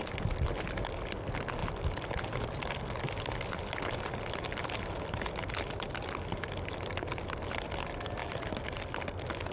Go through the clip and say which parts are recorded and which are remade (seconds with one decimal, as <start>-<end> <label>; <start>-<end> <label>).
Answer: 0.0-9.5 recorded

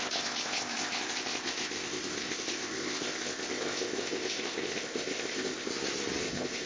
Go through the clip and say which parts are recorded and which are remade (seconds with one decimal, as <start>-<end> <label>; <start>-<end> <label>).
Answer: 0.0-5.7 remade; 5.7-6.2 recorded; 6.2-6.7 remade

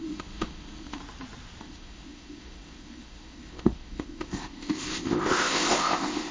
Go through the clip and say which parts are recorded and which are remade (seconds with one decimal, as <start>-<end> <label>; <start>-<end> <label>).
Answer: 0.0-1.0 remade; 1.0-1.6 recorded; 1.6-6.3 remade